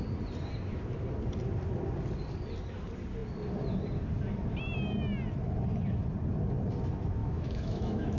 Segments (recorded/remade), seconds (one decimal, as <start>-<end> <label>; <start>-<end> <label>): 0.0-7.2 recorded; 7.2-8.2 remade